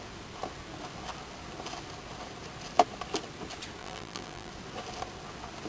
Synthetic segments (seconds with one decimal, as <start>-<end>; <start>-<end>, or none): 3.8-4.5